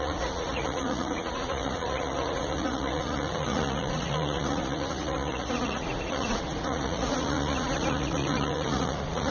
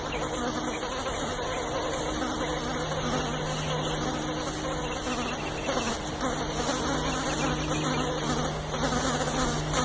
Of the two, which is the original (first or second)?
second